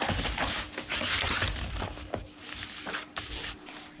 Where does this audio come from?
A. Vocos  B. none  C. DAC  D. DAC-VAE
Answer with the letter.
B